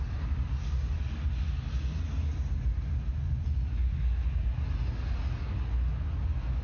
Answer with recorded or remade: recorded